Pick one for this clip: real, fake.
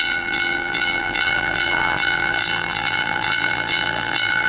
fake